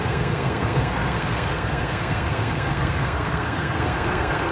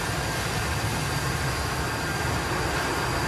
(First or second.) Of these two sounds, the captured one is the second